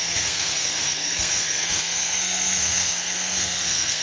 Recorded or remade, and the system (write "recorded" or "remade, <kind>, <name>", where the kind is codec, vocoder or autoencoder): remade, codec, SNAC